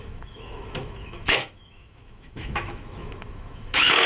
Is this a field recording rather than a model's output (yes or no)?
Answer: no